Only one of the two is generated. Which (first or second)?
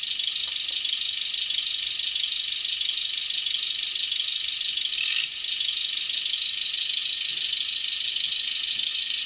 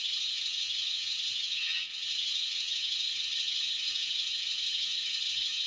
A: second